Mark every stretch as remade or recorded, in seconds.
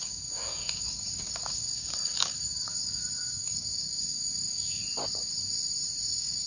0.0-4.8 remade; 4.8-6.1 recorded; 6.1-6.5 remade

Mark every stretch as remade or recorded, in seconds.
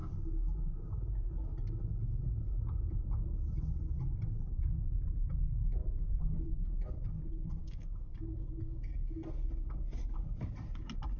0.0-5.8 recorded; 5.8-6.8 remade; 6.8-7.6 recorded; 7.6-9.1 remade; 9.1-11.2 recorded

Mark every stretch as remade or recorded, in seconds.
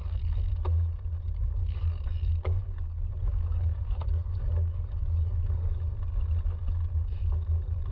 0.0-0.5 remade; 0.5-1.6 recorded; 1.6-5.7 remade; 5.7-7.9 recorded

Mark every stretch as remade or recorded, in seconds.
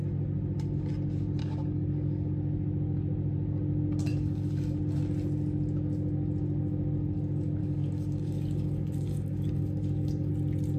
0.0-1.4 recorded; 1.4-2.3 remade; 2.3-4.1 recorded; 4.1-4.8 remade; 4.8-7.6 recorded; 7.6-10.3 remade; 10.3-10.8 recorded